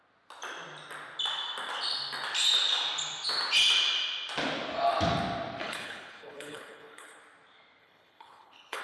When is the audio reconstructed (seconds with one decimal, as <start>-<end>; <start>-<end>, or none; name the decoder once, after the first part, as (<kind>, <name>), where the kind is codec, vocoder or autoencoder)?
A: 5.6-7.2 (codec, HILCodec); 7.8-8.8